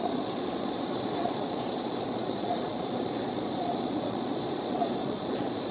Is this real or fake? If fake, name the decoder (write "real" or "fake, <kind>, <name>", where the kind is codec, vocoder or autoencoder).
fake, vocoder, Vocos